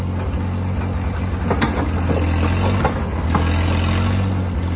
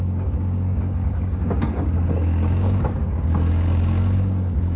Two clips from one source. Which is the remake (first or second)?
second